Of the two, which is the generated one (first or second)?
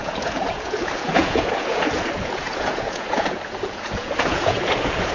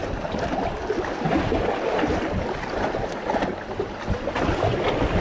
first